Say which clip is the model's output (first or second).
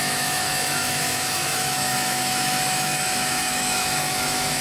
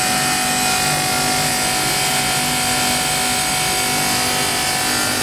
first